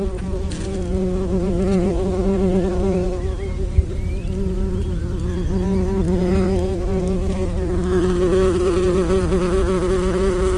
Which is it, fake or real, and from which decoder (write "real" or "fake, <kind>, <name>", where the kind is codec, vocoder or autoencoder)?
fake, vocoder, BigVGAN v2